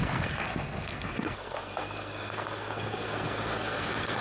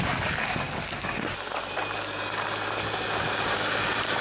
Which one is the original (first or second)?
second